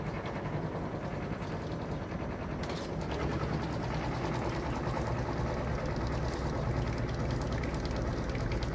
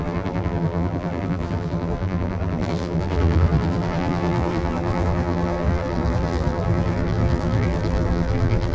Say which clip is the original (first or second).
first